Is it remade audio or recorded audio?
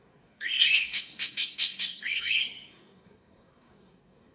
remade